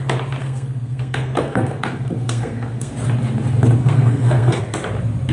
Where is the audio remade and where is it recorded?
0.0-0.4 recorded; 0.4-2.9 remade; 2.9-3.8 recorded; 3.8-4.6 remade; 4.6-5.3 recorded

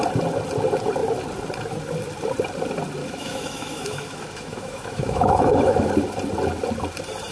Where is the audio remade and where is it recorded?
0.0-3.0 recorded; 3.0-5.9 remade; 5.9-7.3 recorded